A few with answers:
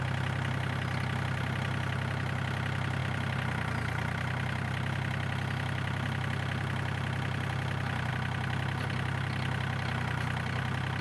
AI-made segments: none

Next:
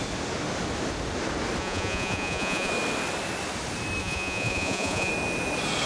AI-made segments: 1.6-2.7 (vocoder, Vocos); 4.0-5.1

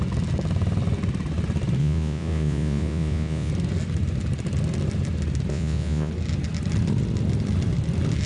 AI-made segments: 1.8-3.5 (vocoder, Vocos); 5.5-6.1

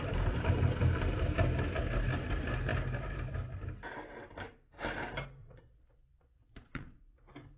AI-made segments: 5.4-7.0 (vocoder, Vocos)